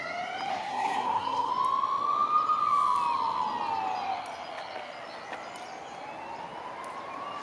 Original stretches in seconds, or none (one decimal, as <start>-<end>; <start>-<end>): 0.0-0.5; 1.5-7.4